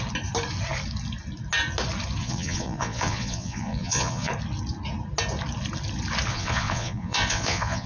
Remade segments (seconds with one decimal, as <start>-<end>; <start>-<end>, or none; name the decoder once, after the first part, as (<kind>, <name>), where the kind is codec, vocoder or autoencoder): 2.2-4.3 (vocoder, Vocos); 6.3-7.9